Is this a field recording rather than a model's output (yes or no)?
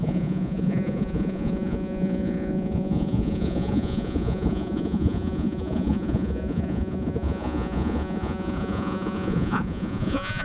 no